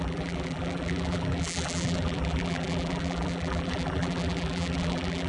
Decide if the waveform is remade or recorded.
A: remade